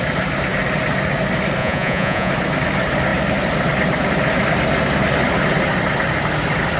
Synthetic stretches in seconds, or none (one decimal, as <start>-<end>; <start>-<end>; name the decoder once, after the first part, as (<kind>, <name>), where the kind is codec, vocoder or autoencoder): 1.6-2.3 (vocoder, Vocos)